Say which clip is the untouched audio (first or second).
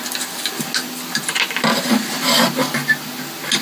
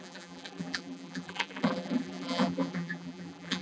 first